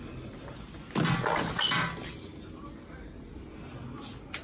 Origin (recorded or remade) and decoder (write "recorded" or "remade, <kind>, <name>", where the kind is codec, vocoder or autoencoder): recorded